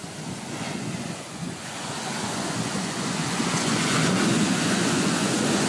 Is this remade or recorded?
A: remade